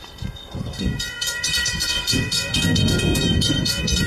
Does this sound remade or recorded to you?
remade